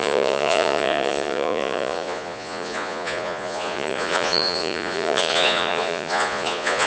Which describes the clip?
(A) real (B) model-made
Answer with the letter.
B